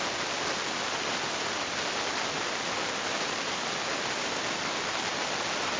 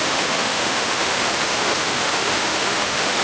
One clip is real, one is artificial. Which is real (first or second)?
first